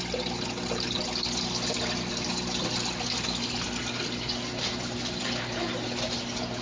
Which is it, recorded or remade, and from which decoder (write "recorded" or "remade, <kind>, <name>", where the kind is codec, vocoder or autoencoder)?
recorded